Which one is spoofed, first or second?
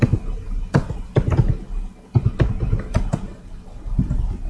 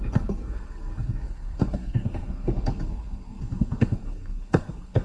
second